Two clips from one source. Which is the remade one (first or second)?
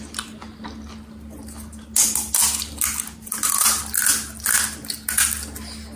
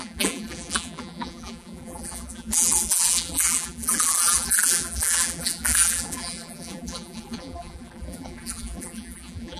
second